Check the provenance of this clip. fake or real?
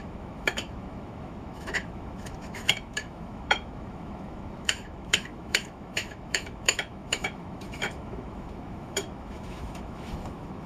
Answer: fake